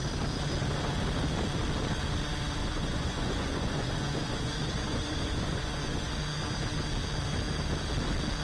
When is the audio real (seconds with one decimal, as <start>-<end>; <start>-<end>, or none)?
0.0-2.6; 6.1-8.4